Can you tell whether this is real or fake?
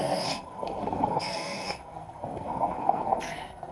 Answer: fake